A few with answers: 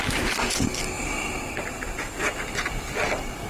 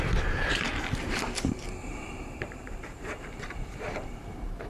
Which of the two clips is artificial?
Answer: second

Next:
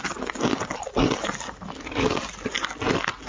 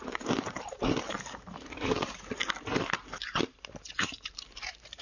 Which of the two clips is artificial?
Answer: second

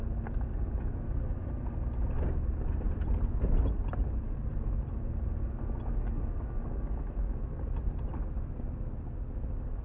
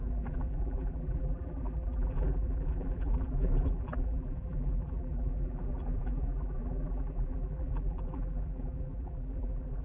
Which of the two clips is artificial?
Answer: second